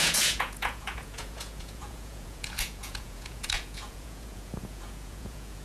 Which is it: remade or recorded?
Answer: remade